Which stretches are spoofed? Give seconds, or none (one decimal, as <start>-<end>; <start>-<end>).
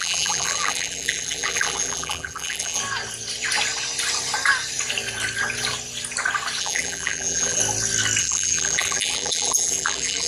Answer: 0.0-2.8; 6.6-7.6; 8.2-10.3